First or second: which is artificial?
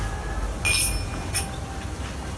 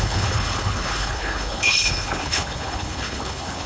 second